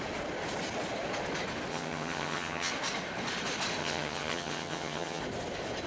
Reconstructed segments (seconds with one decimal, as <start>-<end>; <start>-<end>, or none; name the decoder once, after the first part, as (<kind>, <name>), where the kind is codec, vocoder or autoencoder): 1.7-2.7 (vocoder, HiFi-GAN); 3.8-5.2